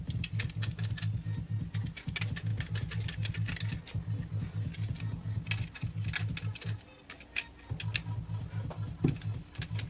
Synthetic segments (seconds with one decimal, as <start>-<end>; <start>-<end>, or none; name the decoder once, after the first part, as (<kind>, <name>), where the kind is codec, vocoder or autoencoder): none